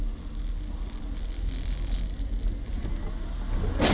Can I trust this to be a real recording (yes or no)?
yes